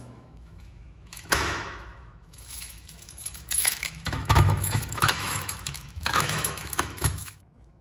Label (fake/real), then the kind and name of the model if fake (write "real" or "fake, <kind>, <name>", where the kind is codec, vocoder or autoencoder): fake, autoencoder, DAC-VAE